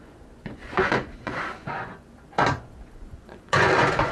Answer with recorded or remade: remade